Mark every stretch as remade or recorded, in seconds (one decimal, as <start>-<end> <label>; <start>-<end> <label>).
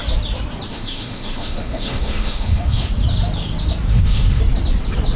0.0-0.7 recorded; 0.7-2.9 remade; 2.9-3.9 recorded; 3.9-4.4 remade; 4.4-5.2 recorded